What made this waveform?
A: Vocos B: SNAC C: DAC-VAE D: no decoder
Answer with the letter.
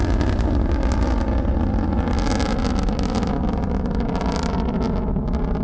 D